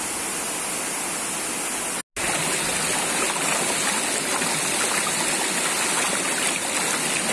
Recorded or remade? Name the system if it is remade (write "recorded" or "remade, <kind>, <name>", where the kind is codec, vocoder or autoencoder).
recorded